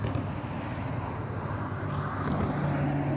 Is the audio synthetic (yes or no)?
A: no